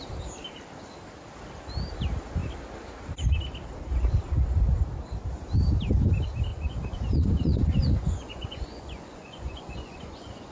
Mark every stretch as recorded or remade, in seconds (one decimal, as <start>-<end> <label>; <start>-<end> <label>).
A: 0.0-6.5 recorded; 6.5-10.5 remade